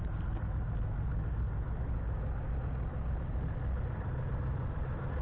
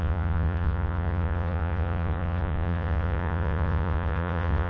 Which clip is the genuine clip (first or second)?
first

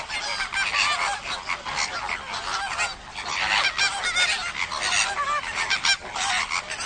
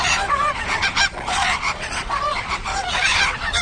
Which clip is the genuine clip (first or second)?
first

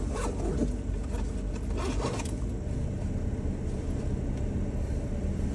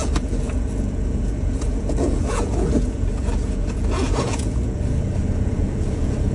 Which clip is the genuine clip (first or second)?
first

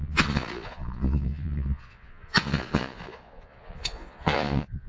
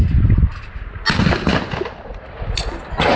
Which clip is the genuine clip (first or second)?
second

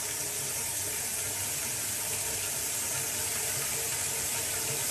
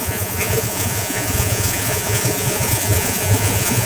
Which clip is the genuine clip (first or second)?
first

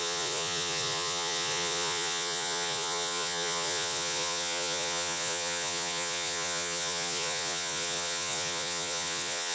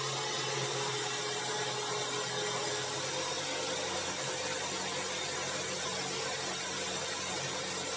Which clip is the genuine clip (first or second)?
second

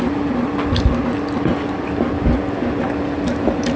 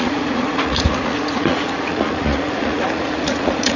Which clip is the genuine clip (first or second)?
first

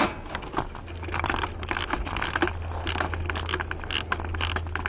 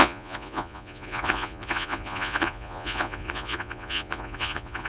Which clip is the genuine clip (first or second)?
first